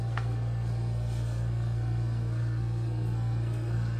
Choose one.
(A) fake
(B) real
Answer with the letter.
A